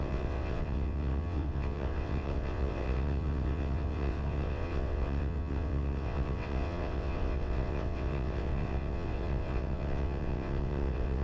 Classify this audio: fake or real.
fake